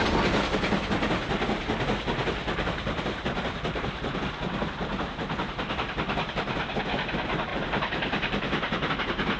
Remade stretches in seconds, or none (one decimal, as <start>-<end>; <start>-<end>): 2.4-6.8; 7.5-8.9